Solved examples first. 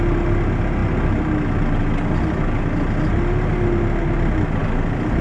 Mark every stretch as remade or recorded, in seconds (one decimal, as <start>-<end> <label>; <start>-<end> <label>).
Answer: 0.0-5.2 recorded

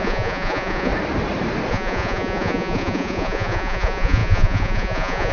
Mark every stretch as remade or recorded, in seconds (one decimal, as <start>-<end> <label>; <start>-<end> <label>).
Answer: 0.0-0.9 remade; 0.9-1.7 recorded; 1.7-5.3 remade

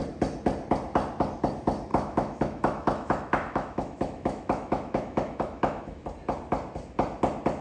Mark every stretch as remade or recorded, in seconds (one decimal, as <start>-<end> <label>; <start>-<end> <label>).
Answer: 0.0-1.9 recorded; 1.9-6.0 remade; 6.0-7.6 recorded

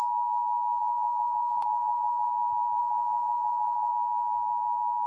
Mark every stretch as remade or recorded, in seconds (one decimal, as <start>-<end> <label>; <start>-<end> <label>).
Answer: 0.0-0.8 recorded; 0.8-2.3 remade; 2.3-2.8 recorded; 2.8-3.9 remade; 3.9-5.1 recorded

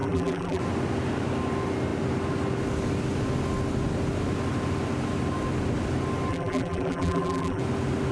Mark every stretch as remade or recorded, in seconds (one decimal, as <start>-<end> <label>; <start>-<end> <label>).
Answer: 0.0-0.6 remade; 0.6-6.3 recorded; 6.3-7.6 remade; 7.6-8.1 recorded